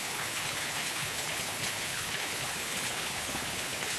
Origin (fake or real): fake